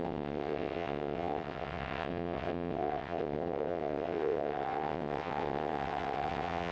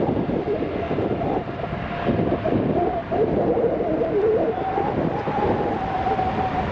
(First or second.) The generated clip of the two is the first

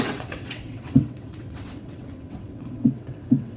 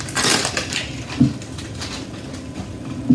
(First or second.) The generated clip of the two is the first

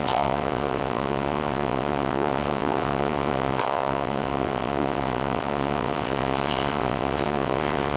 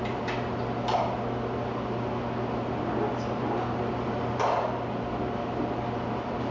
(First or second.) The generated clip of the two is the first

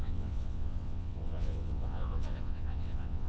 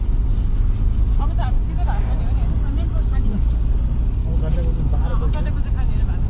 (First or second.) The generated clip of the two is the first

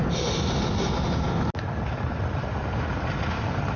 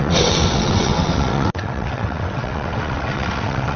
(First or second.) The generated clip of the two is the second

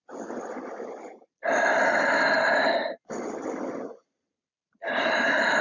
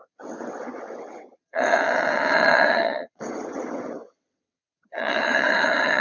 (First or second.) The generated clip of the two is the second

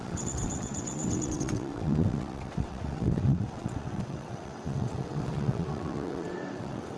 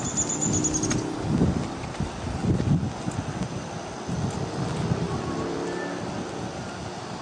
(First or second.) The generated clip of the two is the first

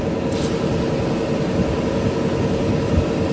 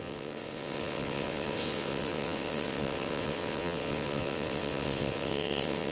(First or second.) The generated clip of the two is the second